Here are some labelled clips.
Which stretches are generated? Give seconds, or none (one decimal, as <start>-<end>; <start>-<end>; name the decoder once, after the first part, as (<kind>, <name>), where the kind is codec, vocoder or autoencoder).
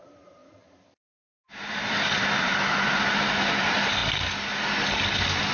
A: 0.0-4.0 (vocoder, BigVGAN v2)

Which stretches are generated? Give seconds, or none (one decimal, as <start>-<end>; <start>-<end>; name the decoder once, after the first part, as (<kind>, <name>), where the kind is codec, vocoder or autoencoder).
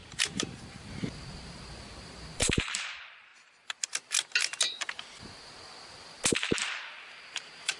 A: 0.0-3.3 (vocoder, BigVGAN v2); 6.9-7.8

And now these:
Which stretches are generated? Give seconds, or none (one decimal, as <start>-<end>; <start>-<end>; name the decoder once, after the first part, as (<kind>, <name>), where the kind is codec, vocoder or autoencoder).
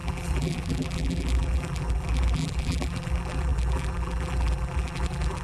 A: 0.0-5.4 (vocoder, BigVGAN v2)